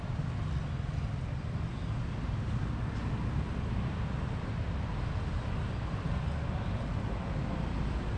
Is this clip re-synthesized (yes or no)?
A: no